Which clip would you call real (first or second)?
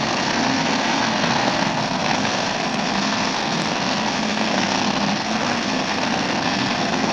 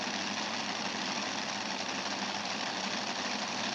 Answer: second